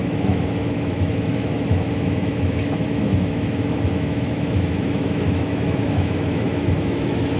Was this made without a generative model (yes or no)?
no